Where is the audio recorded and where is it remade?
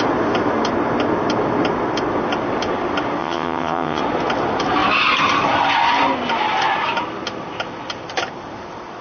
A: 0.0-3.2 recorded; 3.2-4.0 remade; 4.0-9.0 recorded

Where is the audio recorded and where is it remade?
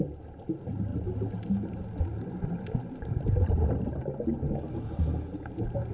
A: 0.0-5.9 recorded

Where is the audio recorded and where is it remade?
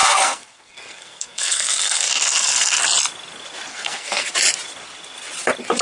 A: 0.0-2.8 remade; 2.8-3.7 recorded; 3.7-4.3 remade; 4.3-5.8 recorded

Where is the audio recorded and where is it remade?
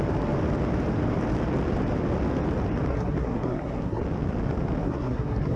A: 0.0-2.9 recorded; 2.9-4.0 remade; 4.0-4.8 recorded; 4.8-5.6 remade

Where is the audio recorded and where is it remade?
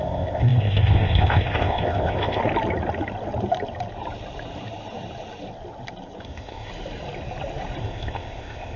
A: 0.0-2.4 remade; 2.4-6.2 recorded; 6.2-6.7 remade; 6.7-7.8 recorded; 7.8-8.8 remade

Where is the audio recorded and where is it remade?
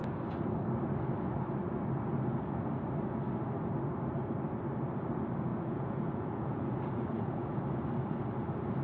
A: 0.0-5.5 recorded; 5.5-7.6 remade; 7.6-8.8 recorded